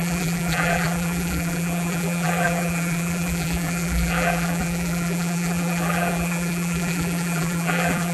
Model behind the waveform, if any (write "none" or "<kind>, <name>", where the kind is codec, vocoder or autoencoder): vocoder, BigVGAN v2